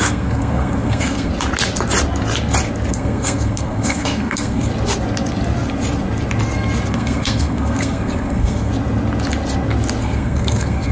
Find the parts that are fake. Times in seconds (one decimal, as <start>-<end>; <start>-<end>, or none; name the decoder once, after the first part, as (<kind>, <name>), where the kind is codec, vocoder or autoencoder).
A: 0.0-1.3 (codec, SNAC); 2.9-4.7; 6.9-8.7; 10.0-10.9